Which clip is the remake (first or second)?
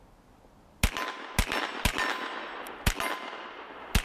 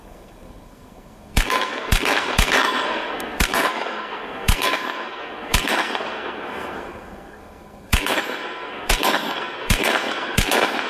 second